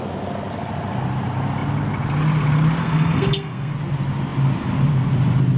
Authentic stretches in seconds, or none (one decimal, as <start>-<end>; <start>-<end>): 0.0-2.8; 3.7-5.6